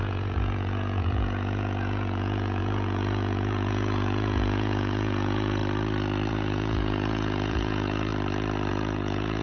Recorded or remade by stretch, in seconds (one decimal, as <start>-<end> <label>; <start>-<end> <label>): 0.0-5.6 remade; 5.6-6.3 recorded; 6.3-8.1 remade; 8.1-8.7 recorded; 8.7-9.4 remade